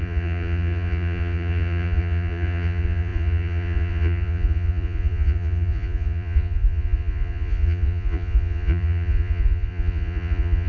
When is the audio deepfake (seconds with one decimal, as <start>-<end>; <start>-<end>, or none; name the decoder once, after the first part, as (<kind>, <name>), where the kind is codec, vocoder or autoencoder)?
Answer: 0.0-10.7 (vocoder, Vocos)

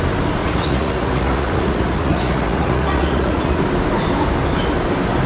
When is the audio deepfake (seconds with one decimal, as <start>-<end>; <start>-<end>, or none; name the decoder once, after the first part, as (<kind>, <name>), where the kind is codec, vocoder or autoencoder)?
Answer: 0.4-3.6 (vocoder, Vocos)

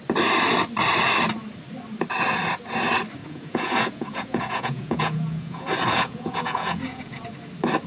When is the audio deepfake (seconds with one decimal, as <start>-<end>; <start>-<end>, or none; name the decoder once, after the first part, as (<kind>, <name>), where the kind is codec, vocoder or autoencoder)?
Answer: 3.2-7.3 (vocoder, Vocos)